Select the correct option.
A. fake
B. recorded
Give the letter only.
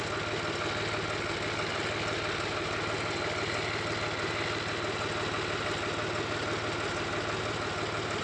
B